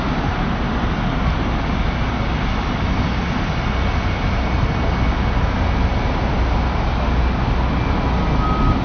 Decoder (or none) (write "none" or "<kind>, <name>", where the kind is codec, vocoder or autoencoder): none